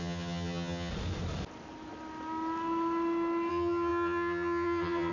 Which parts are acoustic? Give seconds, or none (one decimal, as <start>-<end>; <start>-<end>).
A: 0.9-3.5